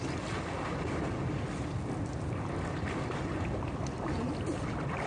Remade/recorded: recorded